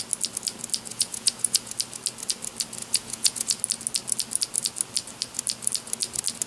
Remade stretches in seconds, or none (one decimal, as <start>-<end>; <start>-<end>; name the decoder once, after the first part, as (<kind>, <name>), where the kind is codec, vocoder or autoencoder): 0.9-1.7 (vocoder, Vocos); 2.8-3.6